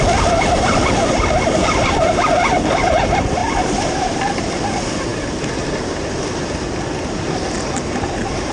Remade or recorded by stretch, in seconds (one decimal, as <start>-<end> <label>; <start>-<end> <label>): 0.0-3.4 recorded; 3.4-4.5 remade; 4.5-8.5 recorded